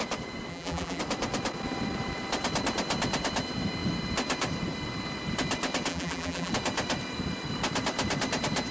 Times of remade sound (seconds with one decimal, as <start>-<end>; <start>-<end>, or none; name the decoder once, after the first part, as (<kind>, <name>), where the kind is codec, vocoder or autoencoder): 0.5-1.0 (vocoder, BigVGAN v2); 5.9-6.5